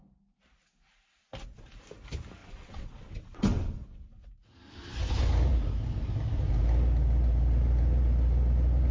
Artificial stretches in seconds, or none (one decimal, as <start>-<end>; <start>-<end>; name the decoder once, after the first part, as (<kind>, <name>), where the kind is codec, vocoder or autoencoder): 2.4-4.3 (vocoder, WaveNeXt)